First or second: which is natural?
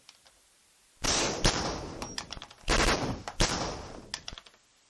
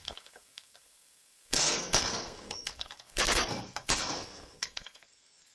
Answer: first